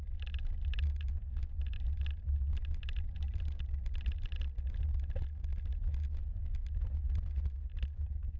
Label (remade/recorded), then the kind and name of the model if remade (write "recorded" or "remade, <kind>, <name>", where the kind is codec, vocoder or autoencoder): recorded